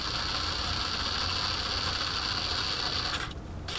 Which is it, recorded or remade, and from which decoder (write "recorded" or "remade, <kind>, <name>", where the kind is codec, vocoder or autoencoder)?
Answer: recorded